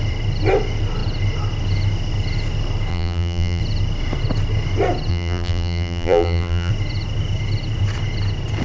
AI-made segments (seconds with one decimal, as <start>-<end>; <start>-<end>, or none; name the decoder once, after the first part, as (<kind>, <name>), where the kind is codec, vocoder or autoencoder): 2.9-3.6 (vocoder, BigVGAN v2); 5.1-6.7